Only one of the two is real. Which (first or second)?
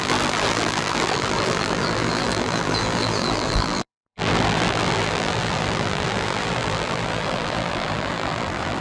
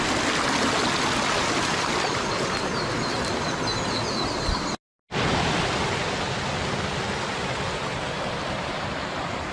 second